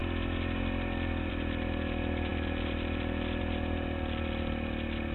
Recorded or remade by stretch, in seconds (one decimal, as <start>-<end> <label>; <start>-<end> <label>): 0.0-5.1 recorded